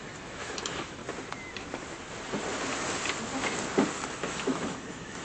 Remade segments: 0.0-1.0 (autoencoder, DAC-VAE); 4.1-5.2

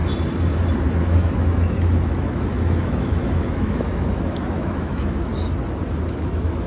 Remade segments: 0.9-5.3 (autoencoder, DAC-VAE); 6.1-6.7

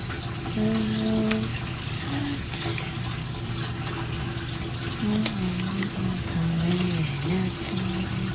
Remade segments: 1.5-2.2 (codec, DAC); 3.2-3.7; 5.2-6.7

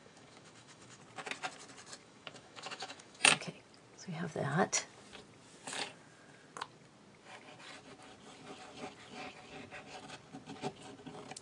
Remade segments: 0.0-1.0 (autoencoder, DAC-VAE); 2.0-3.3

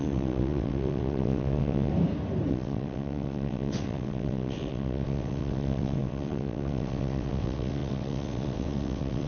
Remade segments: 0.0-1.9 (vocoder, WaveNeXt); 2.5-9.3

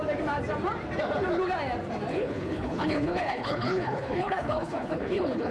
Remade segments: 2.1-5.5 (codec, HILCodec)

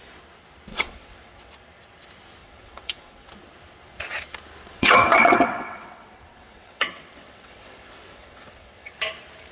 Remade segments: 0.7-1.5 (vocoder, WaveNeXt); 2.4-3.3; 4.7-8.9

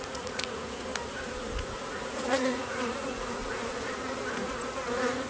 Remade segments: 0.0-0.9 (vocoder, Vocos); 1.4-3.4; 4.3-5.3